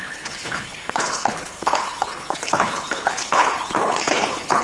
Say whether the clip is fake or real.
fake